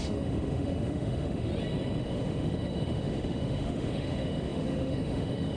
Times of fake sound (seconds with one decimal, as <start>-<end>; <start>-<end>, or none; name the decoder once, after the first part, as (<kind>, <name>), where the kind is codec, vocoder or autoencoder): 0.0-1.5 (autoencoder, DAC-VAE); 2.0-5.6